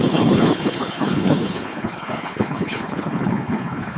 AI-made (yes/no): yes